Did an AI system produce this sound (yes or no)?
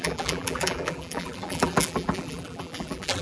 yes